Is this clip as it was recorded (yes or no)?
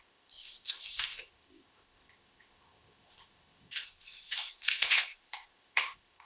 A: no